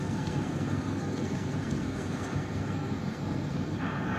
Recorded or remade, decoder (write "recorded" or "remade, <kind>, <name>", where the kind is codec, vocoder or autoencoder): remade, codec, SNAC